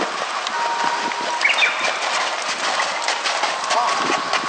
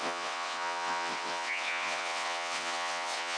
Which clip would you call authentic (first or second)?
first